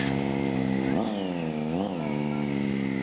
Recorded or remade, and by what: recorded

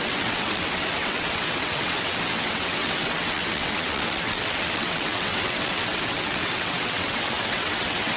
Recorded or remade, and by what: remade, vocoder, WaveNeXt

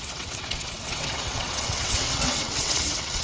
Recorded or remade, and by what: remade, vocoder, WaveNeXt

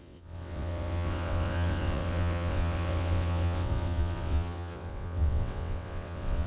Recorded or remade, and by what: remade, vocoder, WaveNeXt